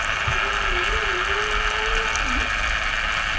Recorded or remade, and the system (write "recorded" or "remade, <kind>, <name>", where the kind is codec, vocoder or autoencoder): recorded